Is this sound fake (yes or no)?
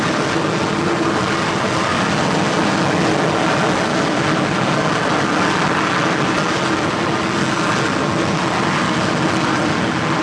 no